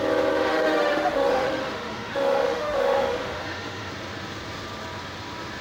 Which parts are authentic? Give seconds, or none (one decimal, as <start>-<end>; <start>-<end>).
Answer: 0.0-0.5; 3.9-5.6